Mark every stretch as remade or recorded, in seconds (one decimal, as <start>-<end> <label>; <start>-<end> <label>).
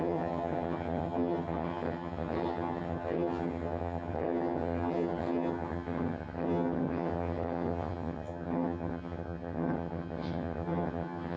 0.0-11.4 remade